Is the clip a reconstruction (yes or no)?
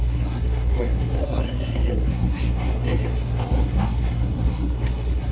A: yes